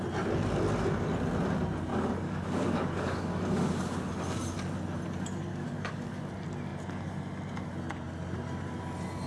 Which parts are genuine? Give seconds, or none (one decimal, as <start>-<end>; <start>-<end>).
0.0-1.9; 4.1-5.5; 6.3-9.3